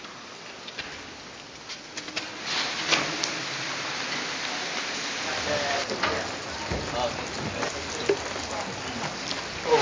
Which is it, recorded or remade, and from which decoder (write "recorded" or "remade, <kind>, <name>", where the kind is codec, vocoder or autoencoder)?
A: recorded